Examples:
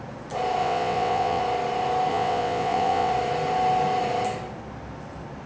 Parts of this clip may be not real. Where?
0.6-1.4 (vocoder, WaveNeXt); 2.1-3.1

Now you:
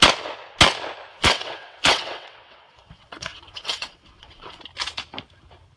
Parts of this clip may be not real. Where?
1.1-4.6 (vocoder, WaveNeXt)

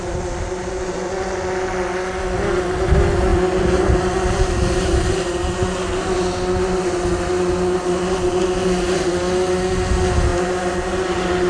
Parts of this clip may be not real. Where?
none